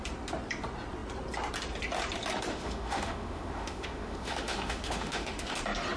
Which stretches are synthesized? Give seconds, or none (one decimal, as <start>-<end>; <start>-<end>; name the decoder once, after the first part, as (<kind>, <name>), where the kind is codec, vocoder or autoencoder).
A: 2.5-5.6 (autoencoder, DAC-VAE)